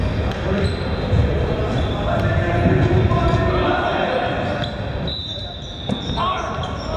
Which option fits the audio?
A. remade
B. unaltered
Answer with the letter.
B